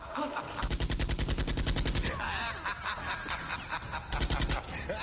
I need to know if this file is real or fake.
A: real